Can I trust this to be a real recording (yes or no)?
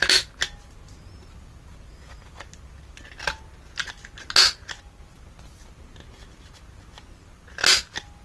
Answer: yes